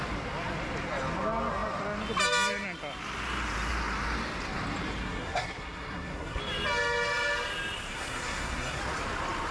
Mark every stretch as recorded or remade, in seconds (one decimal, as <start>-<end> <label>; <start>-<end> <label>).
0.0-5.0 recorded; 5.0-6.4 remade; 6.4-7.9 recorded; 7.9-8.8 remade; 8.8-9.5 recorded